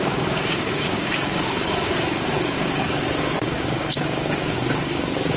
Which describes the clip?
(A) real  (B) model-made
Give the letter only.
B